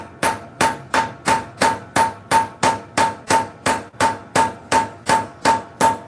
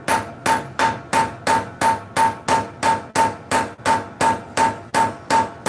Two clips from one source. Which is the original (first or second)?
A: second